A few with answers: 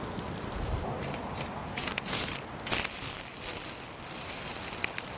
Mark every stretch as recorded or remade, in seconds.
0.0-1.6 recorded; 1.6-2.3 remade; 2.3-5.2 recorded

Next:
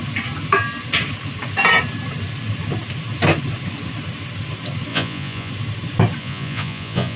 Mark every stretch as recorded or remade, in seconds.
0.0-4.9 recorded; 4.9-5.5 remade; 5.5-6.2 recorded; 6.2-7.2 remade